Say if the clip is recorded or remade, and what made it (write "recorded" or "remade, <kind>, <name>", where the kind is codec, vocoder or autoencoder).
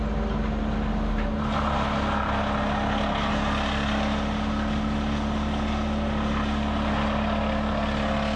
recorded